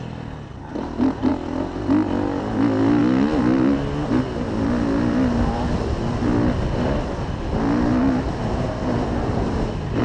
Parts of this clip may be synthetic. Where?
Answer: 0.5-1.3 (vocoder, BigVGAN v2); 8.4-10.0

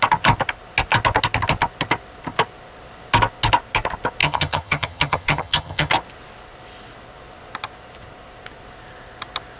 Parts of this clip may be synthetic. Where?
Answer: 4.2-5.9 (vocoder, HiFi-GAN)

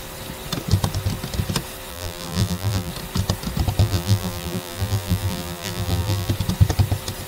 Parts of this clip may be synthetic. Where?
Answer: 1.9-2.9 (vocoder, BigVGAN v2); 3.8-6.3

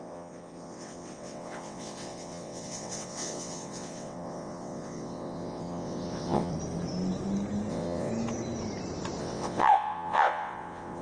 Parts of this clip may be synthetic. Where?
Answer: 0.0-6.5 (vocoder, WaveNeXt); 7.7-8.1; 9.2-11.0